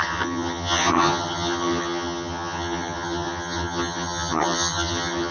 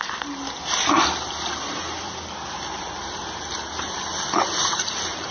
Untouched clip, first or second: second